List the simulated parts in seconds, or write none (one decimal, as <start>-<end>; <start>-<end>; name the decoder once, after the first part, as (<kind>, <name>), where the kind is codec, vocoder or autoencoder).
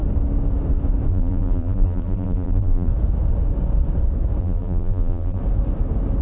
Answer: 1.1-2.9 (vocoder, BigVGAN v2); 4.4-5.4